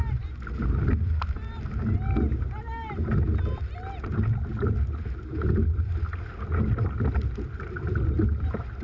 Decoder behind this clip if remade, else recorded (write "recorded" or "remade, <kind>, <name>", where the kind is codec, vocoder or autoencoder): recorded